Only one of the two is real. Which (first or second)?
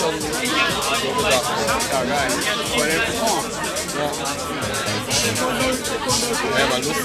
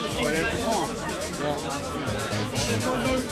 first